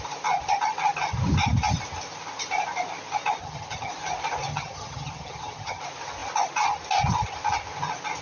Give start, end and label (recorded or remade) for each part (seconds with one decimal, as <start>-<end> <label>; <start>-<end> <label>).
0.0-3.4 recorded; 3.4-3.9 remade; 3.9-4.5 recorded; 4.5-5.8 remade; 5.8-8.2 recorded